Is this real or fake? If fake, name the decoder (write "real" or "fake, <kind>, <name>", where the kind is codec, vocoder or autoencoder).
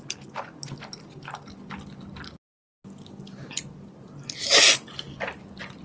real